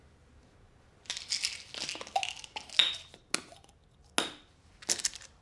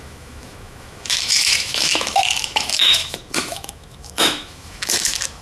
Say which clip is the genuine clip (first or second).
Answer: first